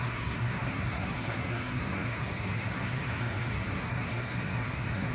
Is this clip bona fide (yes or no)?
no